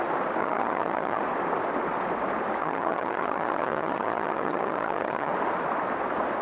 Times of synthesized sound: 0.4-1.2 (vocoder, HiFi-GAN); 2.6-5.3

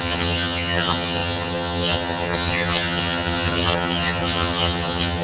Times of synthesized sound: 0.0-5.2 (vocoder, HiFi-GAN)

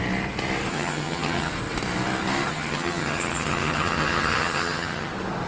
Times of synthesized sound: 0.7-1.5 (vocoder, HiFi-GAN); 2.5-5.1

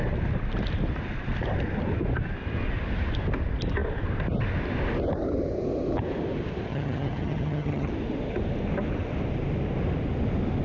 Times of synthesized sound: 6.7-7.9 (vocoder, HiFi-GAN)

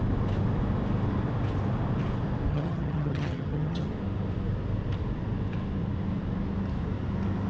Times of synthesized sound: 2.5-3.9 (vocoder, HiFi-GAN)

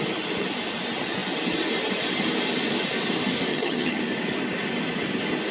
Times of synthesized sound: 3.5-4.0 (vocoder, HiFi-GAN)

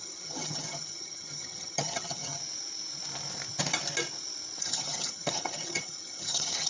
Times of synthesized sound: 0.0-2.4 (vocoder, HiFi-GAN); 4.6-6.7

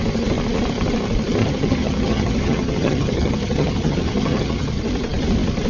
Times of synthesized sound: 1.4-4.8 (vocoder, HiFi-GAN)